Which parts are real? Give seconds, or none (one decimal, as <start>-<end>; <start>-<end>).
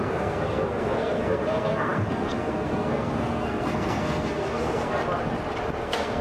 5.0-5.8